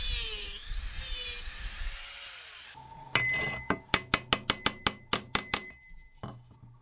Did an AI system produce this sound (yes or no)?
no